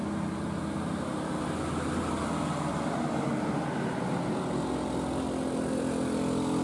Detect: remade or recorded recorded